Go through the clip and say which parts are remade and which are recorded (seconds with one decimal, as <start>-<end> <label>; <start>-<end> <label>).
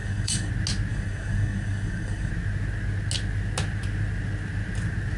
0.0-0.5 remade; 0.5-0.9 recorded; 0.9-2.3 remade; 2.3-5.2 recorded